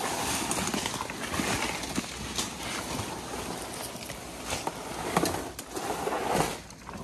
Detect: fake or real real